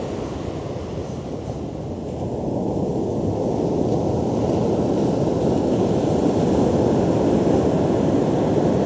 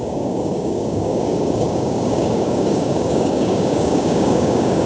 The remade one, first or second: second